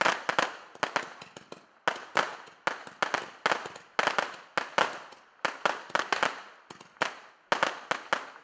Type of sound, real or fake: real